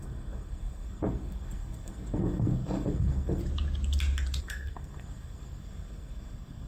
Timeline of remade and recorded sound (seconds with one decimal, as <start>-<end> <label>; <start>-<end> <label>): 0.0-3.4 remade; 3.4-4.4 recorded; 4.4-6.7 remade